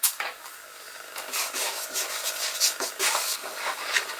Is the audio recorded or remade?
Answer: remade